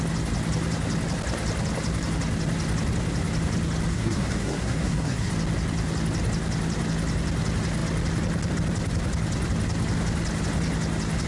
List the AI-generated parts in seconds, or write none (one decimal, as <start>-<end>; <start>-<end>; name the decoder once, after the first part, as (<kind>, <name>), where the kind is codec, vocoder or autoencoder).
3.9-5.3 (codec, SNAC)